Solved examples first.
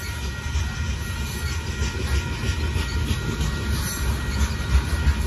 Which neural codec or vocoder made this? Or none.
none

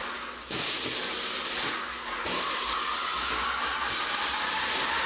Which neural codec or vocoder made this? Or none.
none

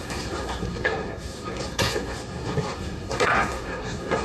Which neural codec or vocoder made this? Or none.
codec, SNAC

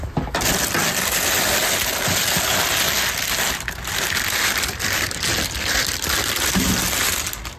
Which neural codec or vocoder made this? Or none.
none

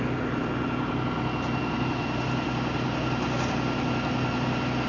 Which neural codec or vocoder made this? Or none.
none